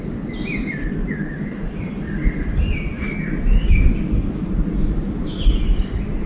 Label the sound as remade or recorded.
recorded